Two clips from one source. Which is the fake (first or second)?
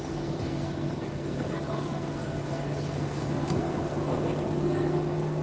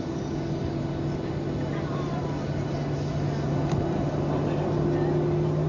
first